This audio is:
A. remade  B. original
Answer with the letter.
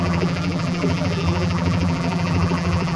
A